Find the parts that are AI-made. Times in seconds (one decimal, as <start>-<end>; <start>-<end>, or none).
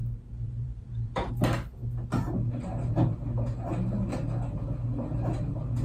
0.0-1.3